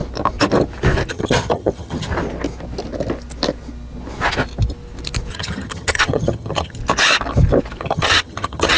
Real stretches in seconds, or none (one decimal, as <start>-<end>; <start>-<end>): 0.0-1.1; 2.1-5.3; 6.8-7.8